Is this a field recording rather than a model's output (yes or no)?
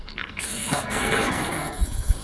no